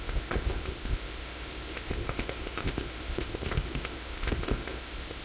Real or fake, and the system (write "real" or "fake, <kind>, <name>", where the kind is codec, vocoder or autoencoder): fake, codec, ZipCodec